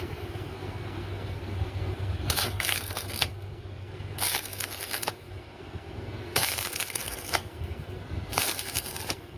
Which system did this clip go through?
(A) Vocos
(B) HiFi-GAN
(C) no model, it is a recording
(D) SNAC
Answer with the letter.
D